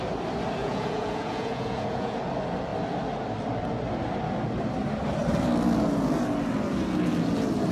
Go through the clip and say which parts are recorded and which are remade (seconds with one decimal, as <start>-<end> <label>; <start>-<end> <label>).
0.0-0.6 recorded; 0.6-2.2 remade; 2.2-7.7 recorded